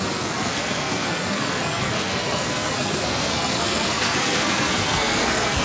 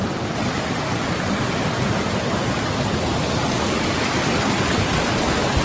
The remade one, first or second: first